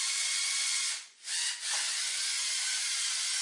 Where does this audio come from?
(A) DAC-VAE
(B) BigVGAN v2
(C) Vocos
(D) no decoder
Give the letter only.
C